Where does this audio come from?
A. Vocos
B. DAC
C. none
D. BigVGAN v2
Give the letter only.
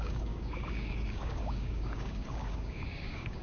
B